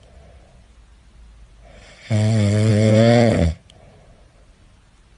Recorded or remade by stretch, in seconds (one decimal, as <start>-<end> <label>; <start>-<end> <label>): 0.0-2.7 recorded; 2.7-4.8 remade; 4.8-5.2 recorded